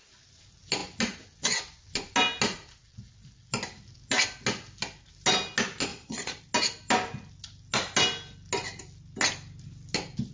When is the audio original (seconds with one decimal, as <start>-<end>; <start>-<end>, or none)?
0.0-5.9; 6.4-10.3